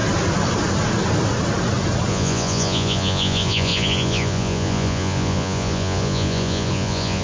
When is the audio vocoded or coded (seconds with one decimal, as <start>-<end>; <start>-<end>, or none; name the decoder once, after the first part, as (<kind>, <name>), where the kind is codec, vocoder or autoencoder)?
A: 2.1-7.2 (vocoder, Vocos)